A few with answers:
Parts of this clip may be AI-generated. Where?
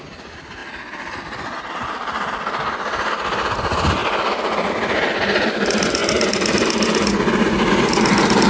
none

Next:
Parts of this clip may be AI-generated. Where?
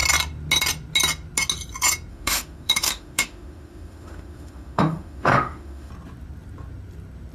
2.1-5.9 (autoencoder, DAC-VAE)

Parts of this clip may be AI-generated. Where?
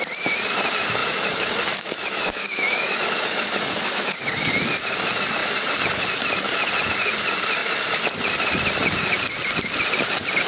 1.0-4.1 (autoencoder, DAC-VAE)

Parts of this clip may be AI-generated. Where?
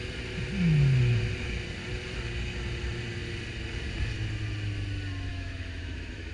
5.3-6.3 (autoencoder, DAC-VAE)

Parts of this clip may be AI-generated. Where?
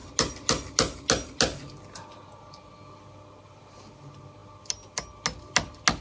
none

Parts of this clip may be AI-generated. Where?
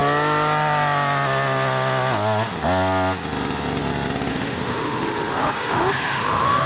4.3-6.7 (autoencoder, DAC-VAE)